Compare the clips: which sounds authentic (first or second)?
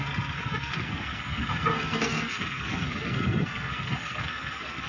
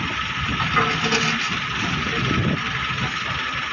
second